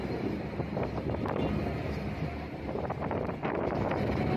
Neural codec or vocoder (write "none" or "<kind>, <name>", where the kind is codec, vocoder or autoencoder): none